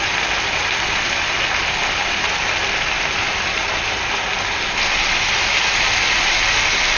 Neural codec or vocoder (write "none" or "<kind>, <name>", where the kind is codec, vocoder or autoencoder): none